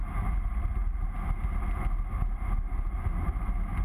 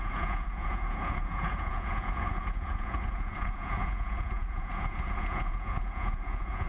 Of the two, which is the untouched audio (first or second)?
first